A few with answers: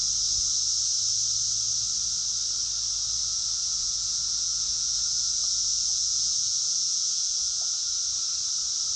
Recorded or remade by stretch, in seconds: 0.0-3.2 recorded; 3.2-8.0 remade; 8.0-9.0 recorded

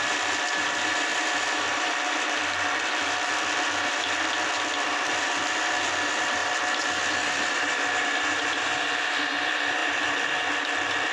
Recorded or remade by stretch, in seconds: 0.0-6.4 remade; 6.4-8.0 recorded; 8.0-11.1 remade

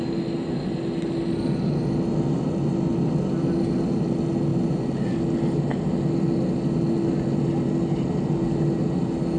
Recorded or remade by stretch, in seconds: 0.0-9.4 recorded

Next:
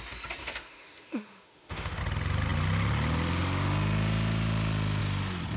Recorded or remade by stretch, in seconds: 0.0-0.4 recorded; 0.4-2.0 remade; 2.0-5.6 recorded

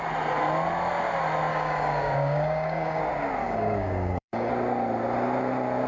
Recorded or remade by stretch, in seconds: 0.0-1.5 recorded; 1.5-3.0 remade; 3.0-3.4 recorded; 3.4-4.5 remade; 4.5-5.9 recorded

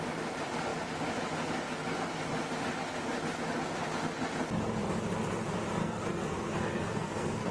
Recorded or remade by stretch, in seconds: 0.0-5.8 recorded; 5.8-7.5 remade